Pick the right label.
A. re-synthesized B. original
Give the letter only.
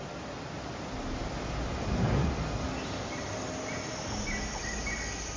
B